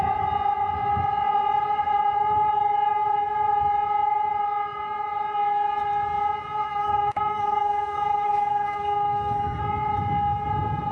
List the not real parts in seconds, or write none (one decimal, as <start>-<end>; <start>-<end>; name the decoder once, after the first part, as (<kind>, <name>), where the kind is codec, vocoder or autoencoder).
6.6-9.6 (codec, SNAC)